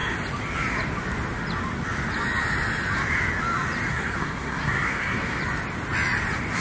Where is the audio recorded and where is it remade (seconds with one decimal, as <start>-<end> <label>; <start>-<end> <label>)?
0.0-3.9 recorded; 3.9-5.4 remade; 5.4-6.6 recorded